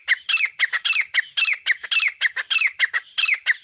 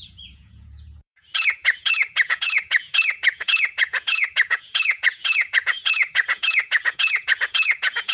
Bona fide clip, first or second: first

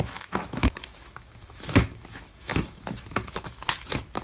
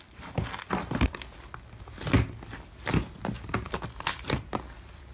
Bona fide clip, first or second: second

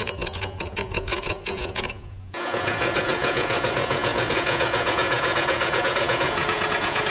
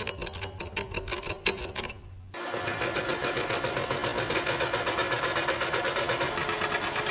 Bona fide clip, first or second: second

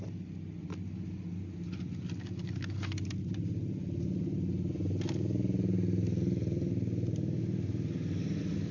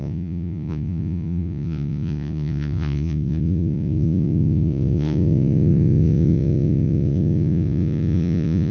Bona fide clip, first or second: first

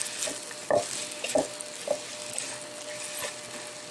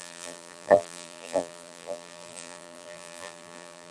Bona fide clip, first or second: first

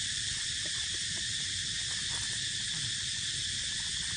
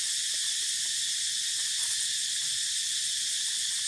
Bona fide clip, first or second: second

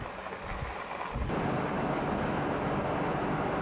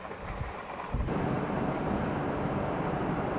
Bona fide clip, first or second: first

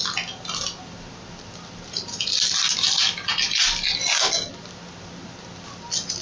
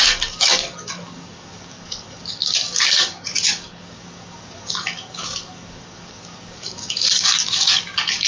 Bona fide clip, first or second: first